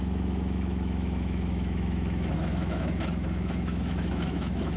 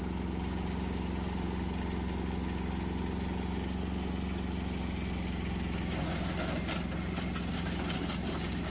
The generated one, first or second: first